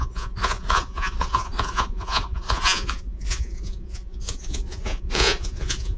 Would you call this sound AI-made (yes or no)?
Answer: yes